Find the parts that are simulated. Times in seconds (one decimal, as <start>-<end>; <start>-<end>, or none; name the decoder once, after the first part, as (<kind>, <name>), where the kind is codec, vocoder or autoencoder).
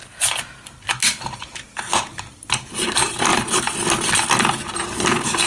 none